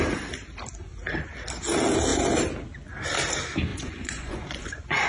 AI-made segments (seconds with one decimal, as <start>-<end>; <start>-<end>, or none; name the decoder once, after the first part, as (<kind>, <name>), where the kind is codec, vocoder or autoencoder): 3.7-5.1 (vocoder, Vocos)